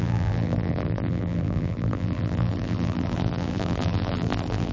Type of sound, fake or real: fake